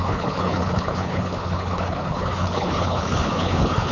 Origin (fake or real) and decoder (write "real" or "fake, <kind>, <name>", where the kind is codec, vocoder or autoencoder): fake, codec, HILCodec